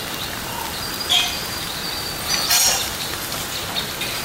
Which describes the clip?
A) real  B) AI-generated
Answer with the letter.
A